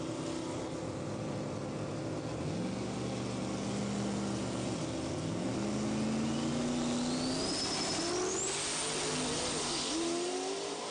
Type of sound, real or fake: real